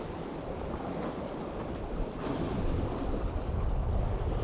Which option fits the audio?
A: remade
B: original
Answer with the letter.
B